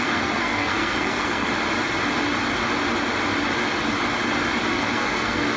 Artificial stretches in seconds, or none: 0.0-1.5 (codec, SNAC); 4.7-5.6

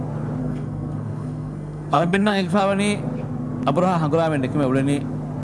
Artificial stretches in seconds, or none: 0.4-2.6 (codec, SNAC)

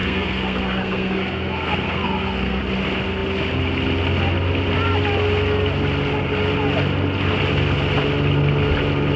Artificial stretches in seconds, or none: 0.0-2.6 (codec, SNAC)

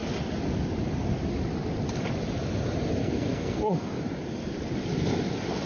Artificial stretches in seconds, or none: 3.0-3.9 (codec, SNAC)

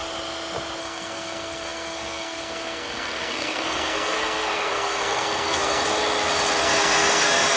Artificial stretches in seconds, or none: 0.8-6.0 (codec, SNAC); 6.6-7.6

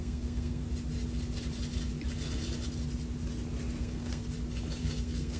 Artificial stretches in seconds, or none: 0.0-0.6 (codec, SNAC); 3.8-4.2; 4.8-5.4